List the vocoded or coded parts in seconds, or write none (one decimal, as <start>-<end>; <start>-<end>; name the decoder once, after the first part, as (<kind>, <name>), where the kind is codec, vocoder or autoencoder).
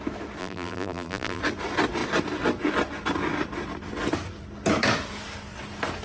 0.4-1.4 (vocoder, BigVGAN v2)